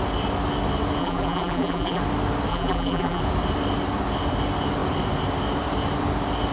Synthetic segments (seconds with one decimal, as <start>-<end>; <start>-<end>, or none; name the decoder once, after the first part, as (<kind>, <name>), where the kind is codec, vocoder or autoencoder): 1.0-2.0 (vocoder, BigVGAN v2); 2.5-3.2